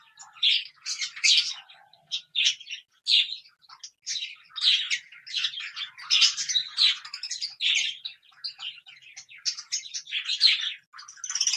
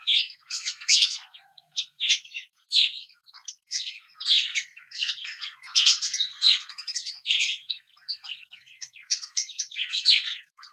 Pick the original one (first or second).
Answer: first